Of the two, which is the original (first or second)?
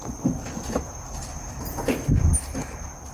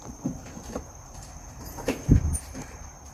first